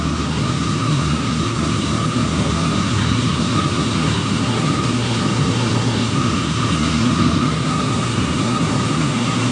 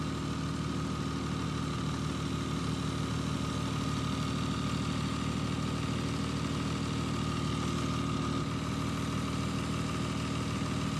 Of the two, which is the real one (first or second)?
second